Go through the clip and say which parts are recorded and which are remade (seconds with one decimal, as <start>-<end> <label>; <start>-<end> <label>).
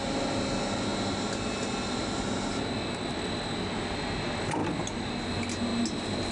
0.0-6.3 recorded